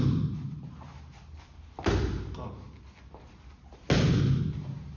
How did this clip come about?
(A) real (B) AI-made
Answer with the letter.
A